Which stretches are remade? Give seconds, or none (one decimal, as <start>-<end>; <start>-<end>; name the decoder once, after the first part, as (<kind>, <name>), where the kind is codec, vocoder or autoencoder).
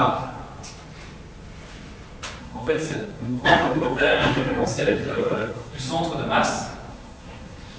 0.0-0.4 (codec, SNAC); 2.4-5.9; 6.9-7.8